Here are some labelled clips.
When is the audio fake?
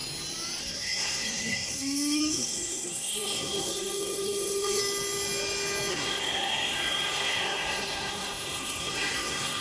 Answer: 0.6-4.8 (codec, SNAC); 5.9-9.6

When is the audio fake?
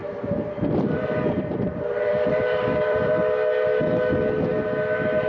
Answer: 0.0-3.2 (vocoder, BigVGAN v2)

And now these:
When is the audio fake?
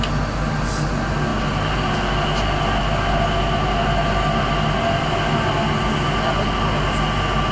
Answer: none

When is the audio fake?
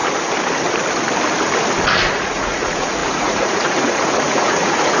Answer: 2.2-5.0 (vocoder, Vocos)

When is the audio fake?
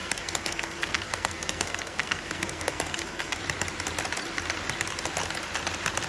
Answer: 0.0-3.4 (codec, SNAC)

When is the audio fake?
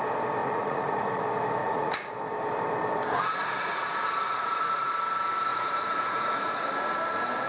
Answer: 0.4-1.2 (vocoder, Vocos); 1.6-2.1; 3.4-4.9; 5.5-6.6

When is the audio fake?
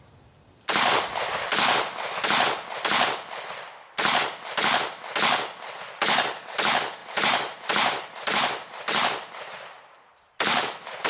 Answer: 7.0-10.1 (vocoder, BigVGAN v2)